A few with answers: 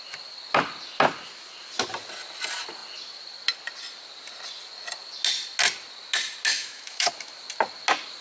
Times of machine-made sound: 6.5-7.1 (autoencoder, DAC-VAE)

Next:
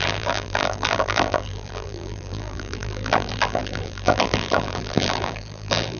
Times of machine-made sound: 0.0-6.0 (vocoder, BigVGAN v2)

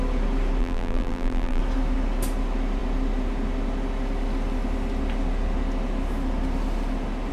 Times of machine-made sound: 0.6-1.6 (vocoder, BigVGAN v2)

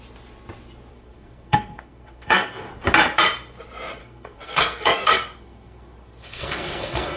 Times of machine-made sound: 0.9-2.7 (codec, SNAC); 4.0-7.2

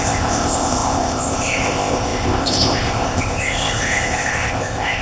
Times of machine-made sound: 0.0-5.0 (codec, ZipCodec)

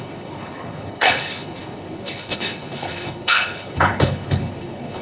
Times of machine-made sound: 0.0-5.0 (codec, HILCodec)